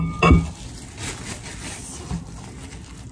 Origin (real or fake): real